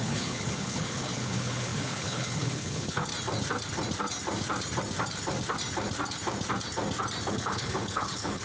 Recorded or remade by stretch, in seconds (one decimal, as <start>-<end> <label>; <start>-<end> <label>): 0.0-3.1 remade; 3.1-7.3 recorded; 7.3-8.4 remade